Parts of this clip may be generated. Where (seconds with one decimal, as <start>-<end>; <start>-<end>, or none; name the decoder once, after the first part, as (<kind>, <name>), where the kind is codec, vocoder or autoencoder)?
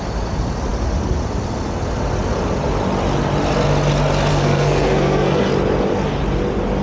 4.3-5.5 (codec, SNAC)